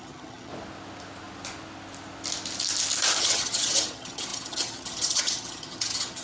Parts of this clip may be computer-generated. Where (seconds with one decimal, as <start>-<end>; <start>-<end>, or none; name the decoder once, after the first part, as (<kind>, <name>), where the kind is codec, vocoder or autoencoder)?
0.0-0.5 (vocoder, HiFi-GAN); 3.2-6.2